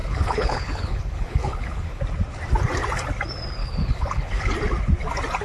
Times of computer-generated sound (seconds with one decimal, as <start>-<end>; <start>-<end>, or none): 0.0-2.0; 3.6-4.5